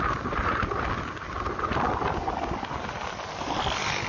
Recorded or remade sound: recorded